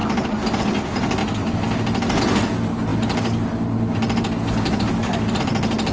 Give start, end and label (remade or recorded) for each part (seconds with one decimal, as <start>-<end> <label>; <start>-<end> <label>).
0.0-5.9 recorded